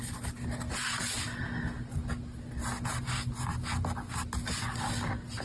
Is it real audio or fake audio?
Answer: real